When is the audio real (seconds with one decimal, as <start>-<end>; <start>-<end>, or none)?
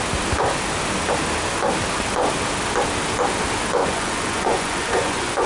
0.0-3.8